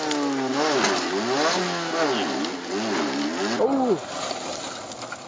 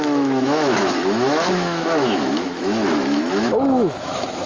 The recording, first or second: first